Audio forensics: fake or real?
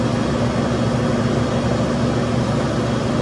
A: real